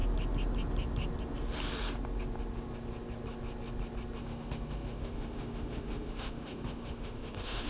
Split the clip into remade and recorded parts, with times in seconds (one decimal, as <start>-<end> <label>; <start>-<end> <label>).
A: 0.0-4.2 recorded; 4.2-7.7 remade